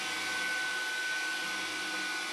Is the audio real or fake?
real